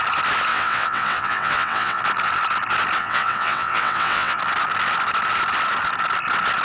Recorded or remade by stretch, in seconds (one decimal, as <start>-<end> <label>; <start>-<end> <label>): 0.0-0.5 recorded; 0.5-2.0 remade; 2.0-3.0 recorded; 3.0-4.4 remade; 4.4-6.6 recorded